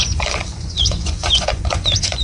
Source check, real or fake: fake